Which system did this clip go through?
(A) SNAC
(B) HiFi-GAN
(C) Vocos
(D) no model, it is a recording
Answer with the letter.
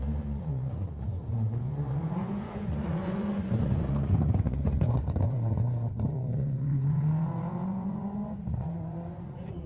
C